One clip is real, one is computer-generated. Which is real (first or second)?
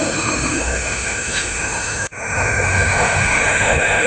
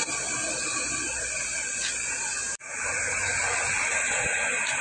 second